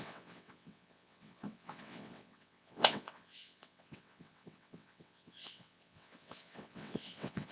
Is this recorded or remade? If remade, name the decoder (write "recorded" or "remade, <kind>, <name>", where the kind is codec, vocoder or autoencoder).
remade, vocoder, WaveNeXt